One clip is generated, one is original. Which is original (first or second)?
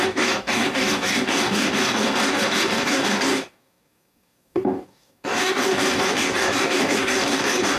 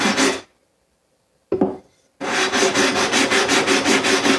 second